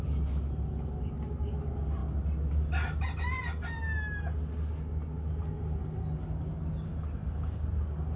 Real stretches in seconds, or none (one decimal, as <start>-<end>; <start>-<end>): 0.0-8.2